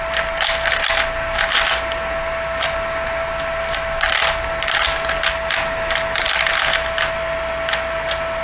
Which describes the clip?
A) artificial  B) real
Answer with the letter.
B